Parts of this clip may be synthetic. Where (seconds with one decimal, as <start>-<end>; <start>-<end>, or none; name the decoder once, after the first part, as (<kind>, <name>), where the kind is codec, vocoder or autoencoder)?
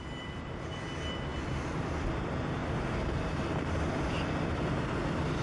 0.0-1.3 (vocoder, BigVGAN v2); 2.2-2.6; 3.9-5.4